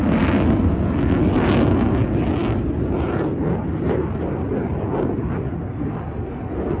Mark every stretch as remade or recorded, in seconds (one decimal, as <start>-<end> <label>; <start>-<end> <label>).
0.0-6.8 recorded